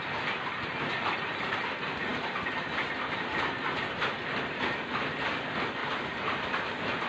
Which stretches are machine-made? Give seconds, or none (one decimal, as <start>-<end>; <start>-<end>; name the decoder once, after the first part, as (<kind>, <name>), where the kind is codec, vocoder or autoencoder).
none